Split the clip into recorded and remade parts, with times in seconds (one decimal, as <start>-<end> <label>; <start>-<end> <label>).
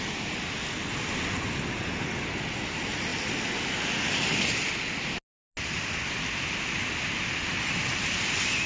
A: 0.0-8.7 recorded